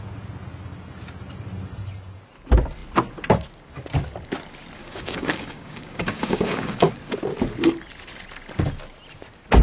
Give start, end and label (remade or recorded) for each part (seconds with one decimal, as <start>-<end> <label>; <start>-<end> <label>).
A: 0.0-4.8 recorded; 4.8-6.9 remade; 6.9-9.6 recorded